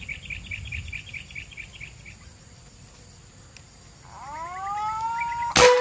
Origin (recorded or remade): recorded